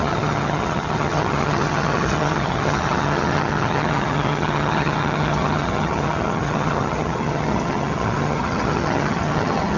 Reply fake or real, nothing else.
fake